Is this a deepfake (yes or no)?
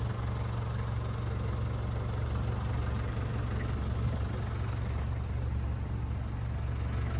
no